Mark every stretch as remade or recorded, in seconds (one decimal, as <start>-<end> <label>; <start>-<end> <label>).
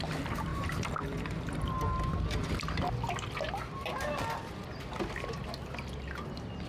0.0-0.5 recorded; 0.5-1.7 remade; 1.7-6.7 recorded